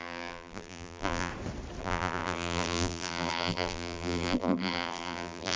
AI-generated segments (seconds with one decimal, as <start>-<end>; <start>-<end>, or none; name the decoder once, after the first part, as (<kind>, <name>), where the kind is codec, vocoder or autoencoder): 0.0-1.3 (vocoder, BigVGAN v2); 1.8-5.6